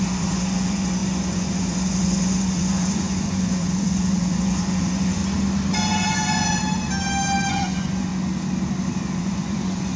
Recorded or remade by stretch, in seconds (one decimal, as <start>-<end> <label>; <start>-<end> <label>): 0.0-5.2 remade; 5.2-5.7 recorded; 5.7-6.6 remade; 6.6-7.5 recorded; 7.5-8.1 remade; 8.1-9.2 recorded; 9.2-10.0 remade